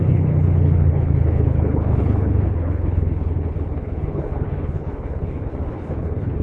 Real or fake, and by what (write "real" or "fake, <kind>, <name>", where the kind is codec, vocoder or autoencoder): fake, codec, HILCodec